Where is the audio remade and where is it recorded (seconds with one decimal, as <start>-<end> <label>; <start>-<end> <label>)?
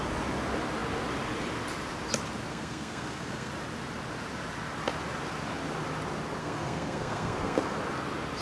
0.0-2.5 recorded; 2.5-3.5 remade; 3.5-6.4 recorded; 6.4-7.8 remade; 7.8-8.4 recorded